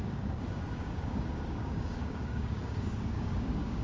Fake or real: fake